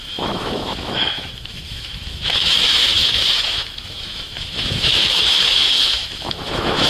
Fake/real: fake